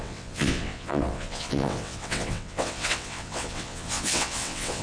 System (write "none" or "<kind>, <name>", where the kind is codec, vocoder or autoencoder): vocoder, WaveNeXt